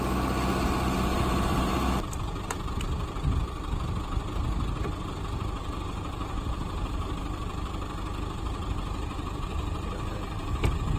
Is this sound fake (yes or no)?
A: no